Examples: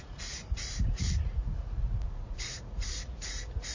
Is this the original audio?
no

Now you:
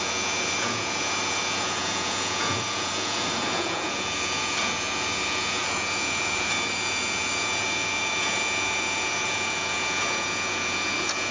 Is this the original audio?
no